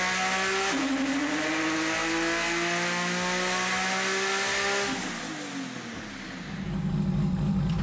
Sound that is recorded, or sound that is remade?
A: recorded